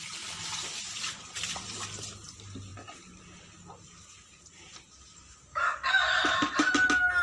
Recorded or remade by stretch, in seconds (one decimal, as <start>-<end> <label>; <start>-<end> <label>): 0.0-5.5 recorded; 5.5-6.2 remade; 6.2-7.2 recorded